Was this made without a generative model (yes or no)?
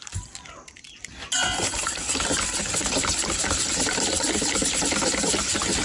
yes